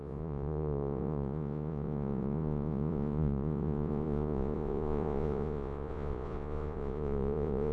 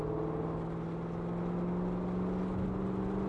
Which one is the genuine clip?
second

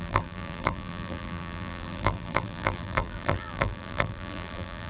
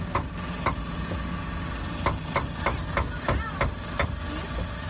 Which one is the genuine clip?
second